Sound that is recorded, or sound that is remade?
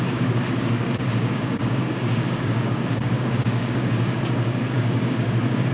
remade